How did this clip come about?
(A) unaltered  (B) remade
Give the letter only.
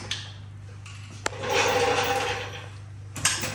A